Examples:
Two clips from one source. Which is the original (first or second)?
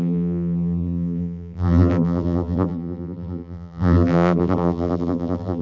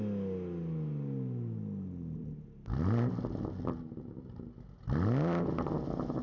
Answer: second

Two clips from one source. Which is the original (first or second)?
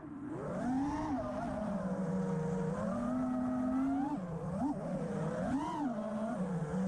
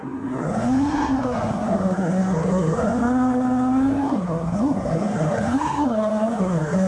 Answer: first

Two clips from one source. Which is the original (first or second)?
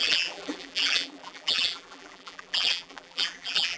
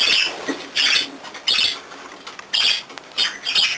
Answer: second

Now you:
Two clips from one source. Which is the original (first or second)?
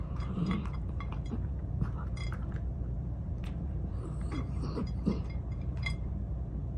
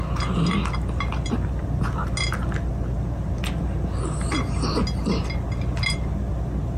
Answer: second